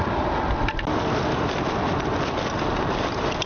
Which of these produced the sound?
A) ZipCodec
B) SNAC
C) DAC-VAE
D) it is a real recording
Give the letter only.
D